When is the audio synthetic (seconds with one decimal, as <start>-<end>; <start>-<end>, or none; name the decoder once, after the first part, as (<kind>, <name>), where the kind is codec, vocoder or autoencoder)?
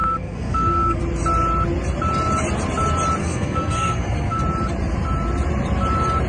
0.0-1.0 (codec, SNAC); 3.2-4.4